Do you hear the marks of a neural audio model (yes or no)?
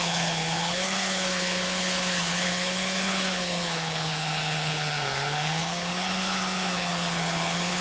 yes